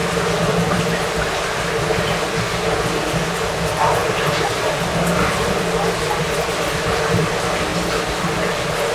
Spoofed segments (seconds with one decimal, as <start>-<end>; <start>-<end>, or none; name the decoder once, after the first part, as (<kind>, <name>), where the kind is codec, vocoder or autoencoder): 0.0-1.9 (vocoder, BigVGAN v2); 3.4-7.7; 8.2-8.9